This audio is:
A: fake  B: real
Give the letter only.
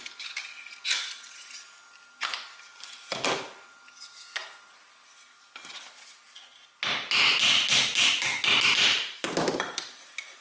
B